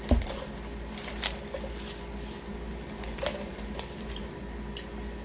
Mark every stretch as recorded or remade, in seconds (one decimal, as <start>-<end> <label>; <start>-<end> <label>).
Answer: 0.0-2.5 recorded; 2.5-4.4 remade; 4.4-5.2 recorded